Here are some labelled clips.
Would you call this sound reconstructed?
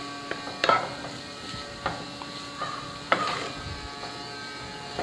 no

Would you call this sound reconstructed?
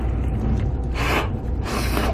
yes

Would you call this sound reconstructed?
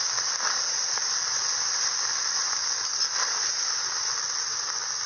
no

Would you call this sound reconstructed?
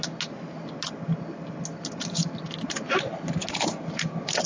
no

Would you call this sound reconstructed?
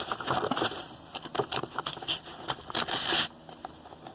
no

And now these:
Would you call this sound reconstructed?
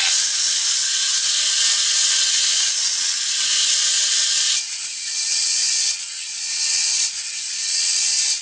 yes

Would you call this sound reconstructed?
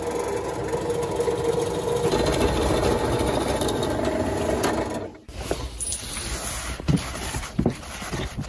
no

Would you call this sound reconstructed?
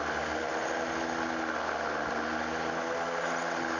no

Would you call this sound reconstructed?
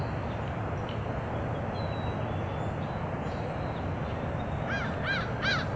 no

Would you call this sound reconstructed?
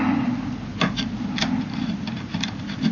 no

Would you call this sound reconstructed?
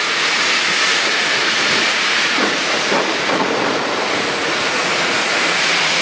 yes